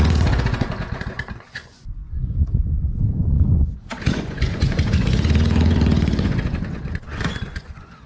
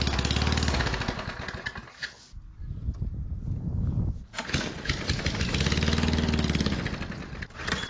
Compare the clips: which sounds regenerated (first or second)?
first